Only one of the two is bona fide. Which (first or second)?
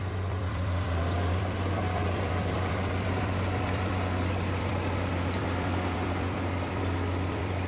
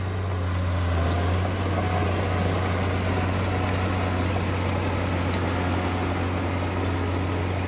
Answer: second